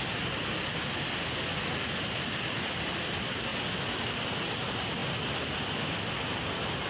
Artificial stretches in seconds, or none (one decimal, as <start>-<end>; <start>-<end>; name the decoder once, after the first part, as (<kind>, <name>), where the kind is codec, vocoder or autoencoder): none